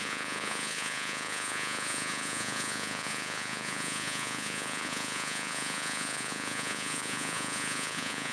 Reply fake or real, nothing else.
fake